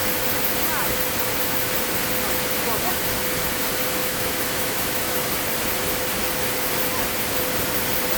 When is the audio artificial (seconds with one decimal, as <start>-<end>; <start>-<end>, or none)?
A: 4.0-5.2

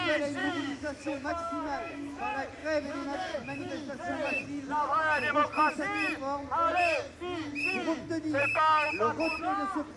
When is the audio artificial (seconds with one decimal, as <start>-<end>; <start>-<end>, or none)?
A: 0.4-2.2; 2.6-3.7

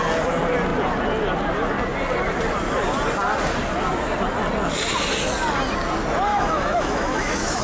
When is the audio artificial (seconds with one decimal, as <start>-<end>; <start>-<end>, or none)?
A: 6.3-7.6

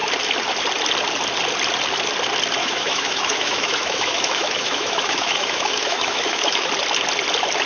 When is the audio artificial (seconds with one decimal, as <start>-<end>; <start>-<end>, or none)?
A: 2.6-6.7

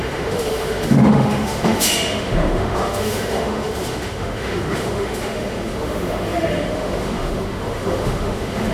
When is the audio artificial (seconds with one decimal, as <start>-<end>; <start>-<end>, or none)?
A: 0.0-8.7

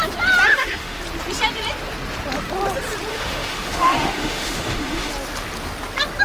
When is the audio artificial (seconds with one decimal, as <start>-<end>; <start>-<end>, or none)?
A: 0.5-1.0; 3.1-5.1

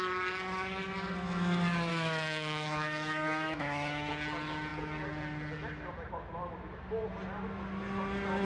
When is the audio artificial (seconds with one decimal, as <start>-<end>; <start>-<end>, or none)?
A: 1.9-4.1